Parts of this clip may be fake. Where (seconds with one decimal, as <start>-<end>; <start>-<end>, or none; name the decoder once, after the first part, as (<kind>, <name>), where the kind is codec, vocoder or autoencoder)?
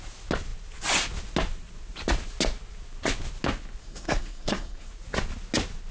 3.8-4.9 (codec, SNAC)